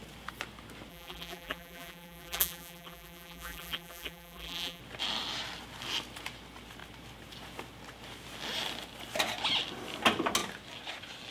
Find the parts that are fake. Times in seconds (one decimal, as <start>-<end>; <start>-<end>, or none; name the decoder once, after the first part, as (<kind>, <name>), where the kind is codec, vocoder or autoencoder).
0.9-4.8 (vocoder, BigVGAN v2)